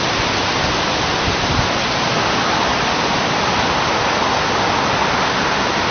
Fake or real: real